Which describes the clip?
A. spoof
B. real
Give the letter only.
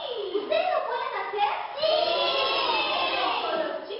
B